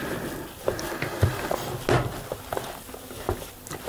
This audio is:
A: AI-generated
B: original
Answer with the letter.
B